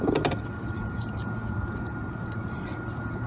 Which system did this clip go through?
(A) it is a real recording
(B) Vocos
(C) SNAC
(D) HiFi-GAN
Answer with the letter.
A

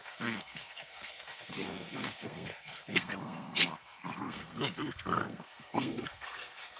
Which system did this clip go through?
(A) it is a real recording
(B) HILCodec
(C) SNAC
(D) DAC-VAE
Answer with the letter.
C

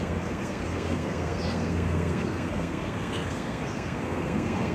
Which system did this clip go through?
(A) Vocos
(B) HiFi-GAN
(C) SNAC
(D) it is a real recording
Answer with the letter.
C